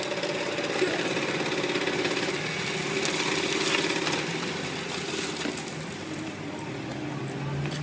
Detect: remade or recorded recorded